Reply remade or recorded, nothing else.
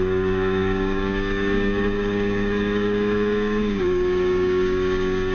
remade